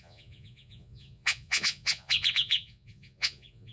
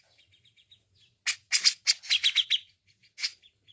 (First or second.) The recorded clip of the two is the second